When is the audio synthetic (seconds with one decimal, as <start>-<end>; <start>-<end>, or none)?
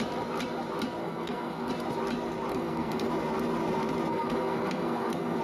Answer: 1.0-1.7; 2.5-3.1; 4.1-5.4